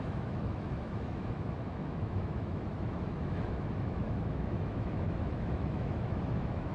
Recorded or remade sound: remade